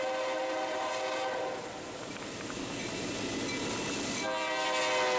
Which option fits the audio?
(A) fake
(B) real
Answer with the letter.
B